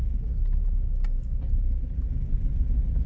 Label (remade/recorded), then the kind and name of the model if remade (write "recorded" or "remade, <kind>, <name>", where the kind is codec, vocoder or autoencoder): recorded